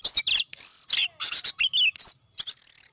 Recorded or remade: recorded